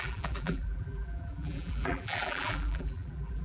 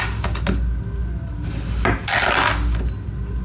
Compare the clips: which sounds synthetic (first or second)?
first